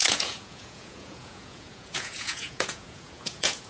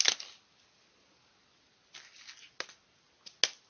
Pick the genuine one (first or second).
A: second